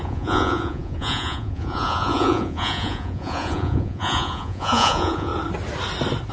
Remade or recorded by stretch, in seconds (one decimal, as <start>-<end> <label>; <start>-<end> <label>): 0.0-5.3 remade; 5.3-6.3 recorded